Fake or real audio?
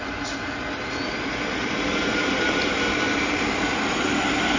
real